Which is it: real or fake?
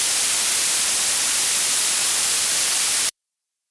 fake